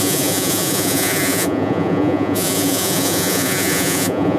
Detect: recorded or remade remade